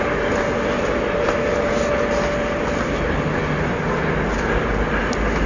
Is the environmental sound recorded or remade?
recorded